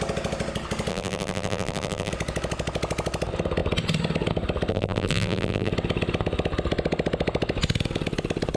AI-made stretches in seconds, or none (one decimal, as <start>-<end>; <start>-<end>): 0.9-2.1; 4.7-5.7